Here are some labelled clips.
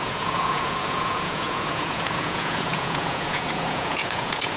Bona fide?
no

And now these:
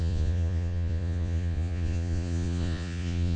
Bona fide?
no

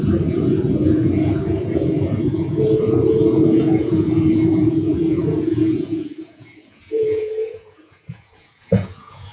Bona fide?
no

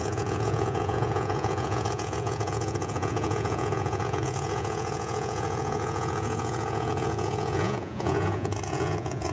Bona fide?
no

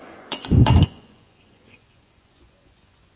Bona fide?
no